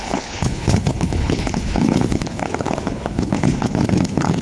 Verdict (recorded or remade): remade